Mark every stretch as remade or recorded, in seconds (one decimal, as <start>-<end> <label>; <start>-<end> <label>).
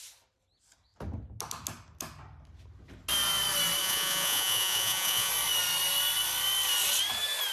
0.0-3.8 recorded; 3.8-5.3 remade; 5.3-7.5 recorded